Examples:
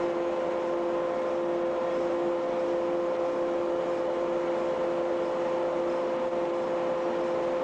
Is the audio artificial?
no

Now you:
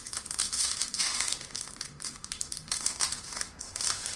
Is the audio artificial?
yes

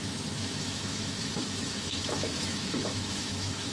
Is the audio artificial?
yes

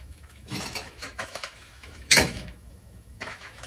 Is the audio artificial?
yes